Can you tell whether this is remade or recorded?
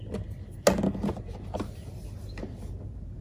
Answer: recorded